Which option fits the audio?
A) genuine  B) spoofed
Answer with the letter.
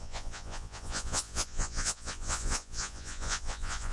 B